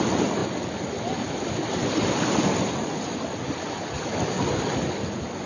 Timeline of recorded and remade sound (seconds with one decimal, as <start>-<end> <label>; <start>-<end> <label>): 0.0-5.5 recorded